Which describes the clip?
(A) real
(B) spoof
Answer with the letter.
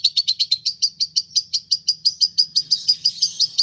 B